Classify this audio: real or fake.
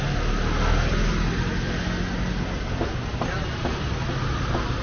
real